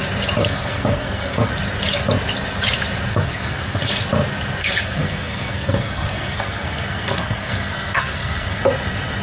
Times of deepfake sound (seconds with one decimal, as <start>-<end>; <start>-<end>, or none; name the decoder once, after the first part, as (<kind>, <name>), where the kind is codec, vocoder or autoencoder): 0.4-1.5 (codec, SNAC); 3.1-4.0; 4.6-8.6